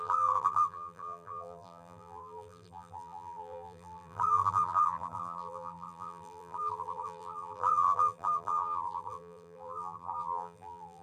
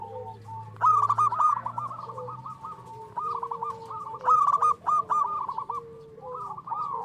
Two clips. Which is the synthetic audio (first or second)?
first